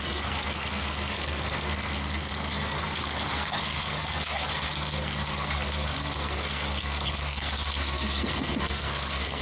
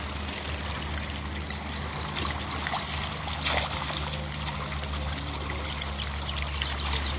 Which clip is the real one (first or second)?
second